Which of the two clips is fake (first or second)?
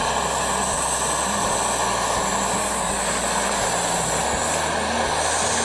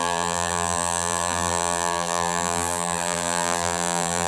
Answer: second